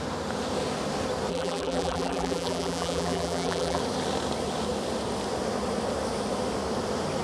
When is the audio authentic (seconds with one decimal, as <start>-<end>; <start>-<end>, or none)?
0.0-1.3; 3.8-7.2